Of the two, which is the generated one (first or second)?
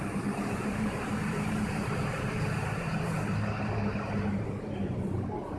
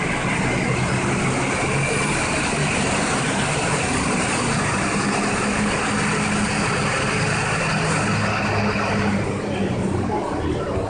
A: first